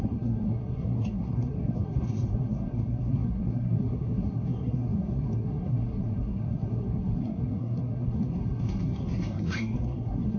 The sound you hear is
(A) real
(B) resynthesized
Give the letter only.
B